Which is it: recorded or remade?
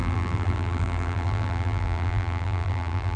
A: remade